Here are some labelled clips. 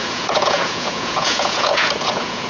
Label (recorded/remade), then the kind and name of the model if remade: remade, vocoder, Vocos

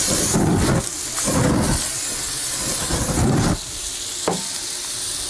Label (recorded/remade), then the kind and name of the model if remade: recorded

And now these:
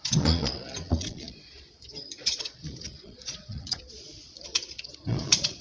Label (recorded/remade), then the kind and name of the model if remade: remade, vocoder, Vocos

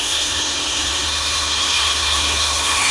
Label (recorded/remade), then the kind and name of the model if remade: remade, codec, SNAC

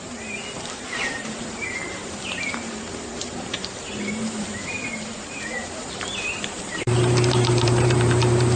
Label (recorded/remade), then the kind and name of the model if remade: remade, vocoder, BigVGAN v2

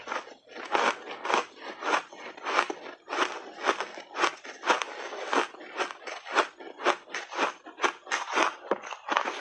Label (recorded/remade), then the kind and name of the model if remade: recorded